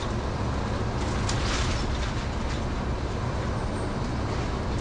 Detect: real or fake real